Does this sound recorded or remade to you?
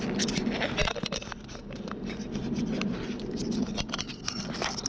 remade